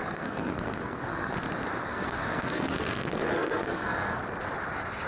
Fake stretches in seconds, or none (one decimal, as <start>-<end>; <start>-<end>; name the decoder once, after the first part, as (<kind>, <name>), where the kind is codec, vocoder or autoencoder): 0.0-1.3 (codec, SNAC); 1.8-4.2

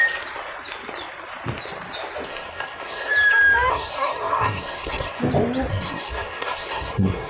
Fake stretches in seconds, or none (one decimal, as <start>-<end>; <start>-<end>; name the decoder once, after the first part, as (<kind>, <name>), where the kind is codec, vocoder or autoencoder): 2.3-3.1 (codec, SNAC); 3.7-5.2; 5.7-7.3

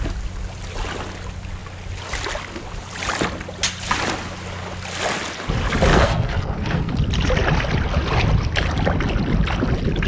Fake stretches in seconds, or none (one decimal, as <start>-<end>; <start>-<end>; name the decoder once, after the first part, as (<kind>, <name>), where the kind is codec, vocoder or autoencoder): 5.9-6.9 (codec, SNAC)

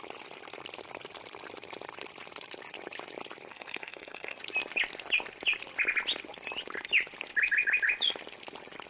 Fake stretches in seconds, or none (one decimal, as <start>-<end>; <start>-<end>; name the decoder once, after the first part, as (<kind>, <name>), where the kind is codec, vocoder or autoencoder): 3.5-4.4 (codec, SNAC)

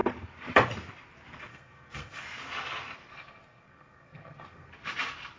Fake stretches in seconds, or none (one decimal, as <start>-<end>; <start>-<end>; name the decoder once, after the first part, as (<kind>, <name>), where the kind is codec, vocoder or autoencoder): 1.5-2.2 (codec, SNAC); 3.1-4.7

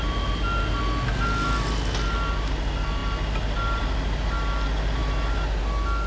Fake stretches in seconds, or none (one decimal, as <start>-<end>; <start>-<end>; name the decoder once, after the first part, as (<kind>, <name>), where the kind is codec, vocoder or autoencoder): none

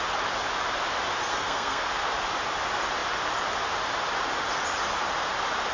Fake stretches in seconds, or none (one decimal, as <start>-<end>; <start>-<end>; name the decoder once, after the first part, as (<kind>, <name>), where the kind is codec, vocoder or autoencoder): 1.3-1.9 (codec, SNAC)